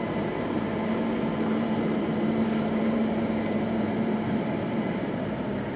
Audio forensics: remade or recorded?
remade